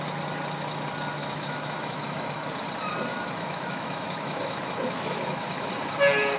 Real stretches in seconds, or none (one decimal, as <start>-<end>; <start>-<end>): 0.0-1.2; 2.5-3.1; 5.7-6.4